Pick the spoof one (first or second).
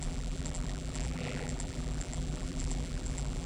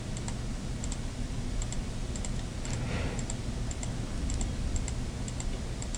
first